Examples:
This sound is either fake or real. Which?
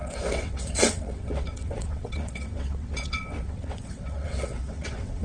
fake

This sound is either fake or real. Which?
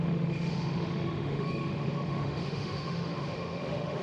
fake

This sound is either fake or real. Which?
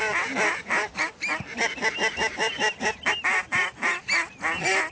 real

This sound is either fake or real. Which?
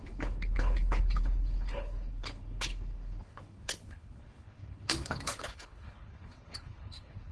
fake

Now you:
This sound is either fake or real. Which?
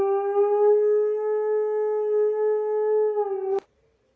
real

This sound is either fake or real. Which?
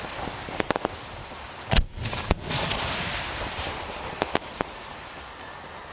fake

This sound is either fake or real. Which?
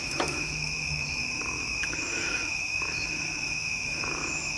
fake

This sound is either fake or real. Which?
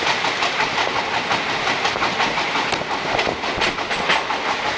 real